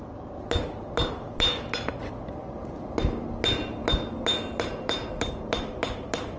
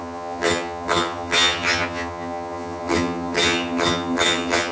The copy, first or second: second